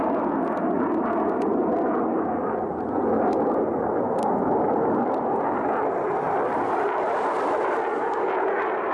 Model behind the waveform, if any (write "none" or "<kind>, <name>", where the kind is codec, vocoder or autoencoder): none